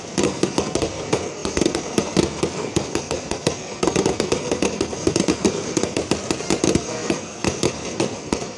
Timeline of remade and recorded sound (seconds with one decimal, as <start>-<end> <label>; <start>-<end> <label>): 0.0-6.0 remade; 6.0-6.6 recorded; 6.6-8.6 remade